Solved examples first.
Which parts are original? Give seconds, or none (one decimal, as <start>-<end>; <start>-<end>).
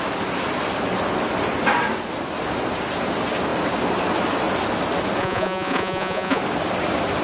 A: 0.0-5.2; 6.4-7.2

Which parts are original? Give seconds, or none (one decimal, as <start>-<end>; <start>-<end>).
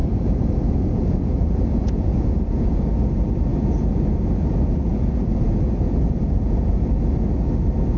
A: 2.9-3.5; 4.5-4.9; 6.7-8.0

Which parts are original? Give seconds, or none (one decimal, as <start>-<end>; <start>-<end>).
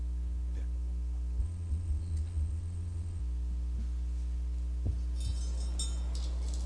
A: 0.0-1.4; 3.2-6.7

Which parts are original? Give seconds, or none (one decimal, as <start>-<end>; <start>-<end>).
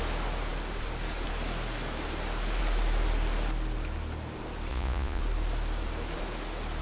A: 0.0-4.7; 5.2-6.8